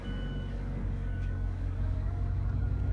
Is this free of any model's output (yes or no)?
no